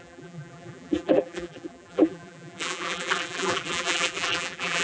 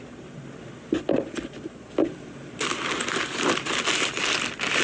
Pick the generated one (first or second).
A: first